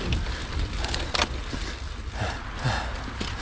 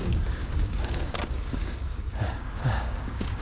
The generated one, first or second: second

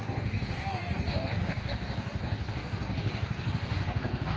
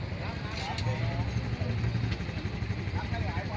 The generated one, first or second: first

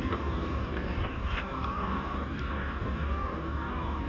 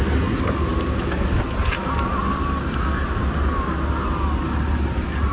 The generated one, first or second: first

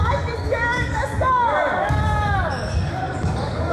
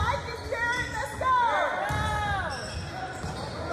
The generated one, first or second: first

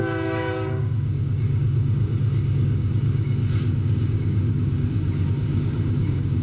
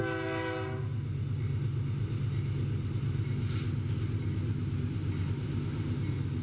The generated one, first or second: first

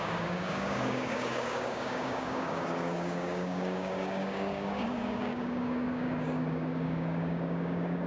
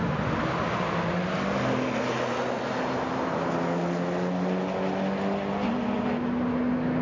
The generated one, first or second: first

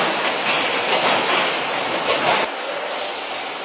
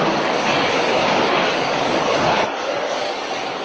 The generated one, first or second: second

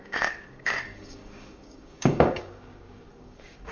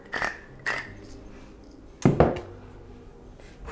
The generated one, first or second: first